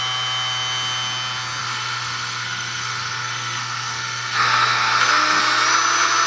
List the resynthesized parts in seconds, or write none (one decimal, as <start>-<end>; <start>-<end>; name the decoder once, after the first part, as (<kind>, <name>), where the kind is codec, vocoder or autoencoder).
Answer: 1.6-5.4 (codec, SNAC)